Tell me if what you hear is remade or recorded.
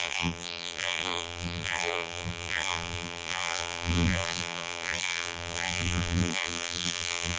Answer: remade